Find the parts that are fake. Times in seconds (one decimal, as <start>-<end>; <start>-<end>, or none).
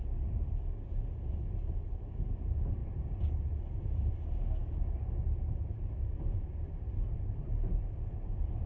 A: none